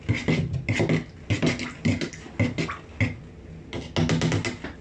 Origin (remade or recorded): recorded